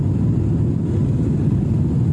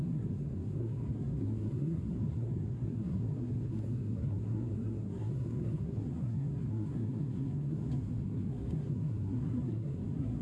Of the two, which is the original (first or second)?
first